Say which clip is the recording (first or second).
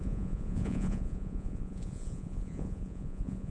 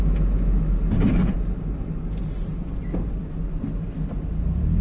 second